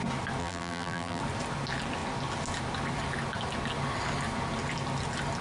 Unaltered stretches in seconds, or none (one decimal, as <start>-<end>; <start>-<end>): 0.0-0.4; 1.2-5.4